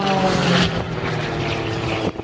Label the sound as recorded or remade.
remade